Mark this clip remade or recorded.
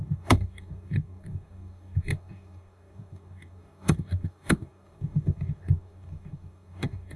remade